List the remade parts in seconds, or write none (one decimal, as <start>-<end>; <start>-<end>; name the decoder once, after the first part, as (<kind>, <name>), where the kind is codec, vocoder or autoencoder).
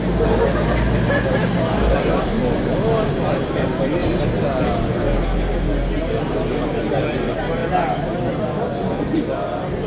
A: none